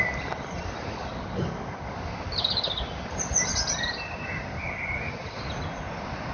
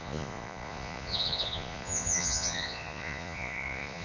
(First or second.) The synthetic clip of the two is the second